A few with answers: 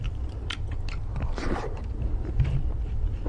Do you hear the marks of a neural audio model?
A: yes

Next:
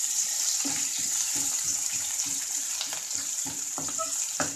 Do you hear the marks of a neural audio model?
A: yes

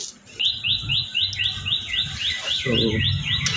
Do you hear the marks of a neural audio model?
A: no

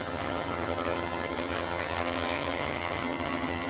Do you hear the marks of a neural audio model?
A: yes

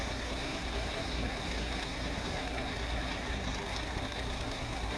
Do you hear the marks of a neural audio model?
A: yes